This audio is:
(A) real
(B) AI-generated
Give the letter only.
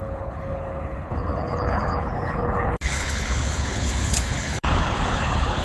B